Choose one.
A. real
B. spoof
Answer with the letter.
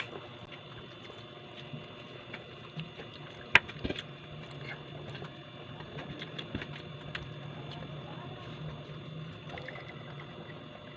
A